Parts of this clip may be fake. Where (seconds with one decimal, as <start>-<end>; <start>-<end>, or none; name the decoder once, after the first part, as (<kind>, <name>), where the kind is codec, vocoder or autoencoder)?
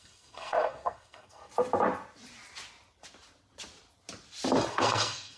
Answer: 0.0-1.5 (codec, SNAC); 4.7-5.4